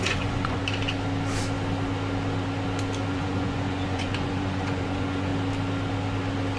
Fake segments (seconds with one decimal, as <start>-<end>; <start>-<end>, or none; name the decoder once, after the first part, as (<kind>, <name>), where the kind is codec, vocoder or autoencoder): 0.0-0.6 (vocoder, Vocos); 3.1-5.3